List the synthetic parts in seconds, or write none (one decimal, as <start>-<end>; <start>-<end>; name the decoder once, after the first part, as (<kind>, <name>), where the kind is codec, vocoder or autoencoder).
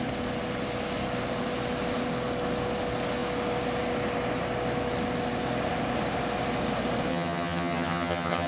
7.1-8.5 (vocoder, HiFi-GAN)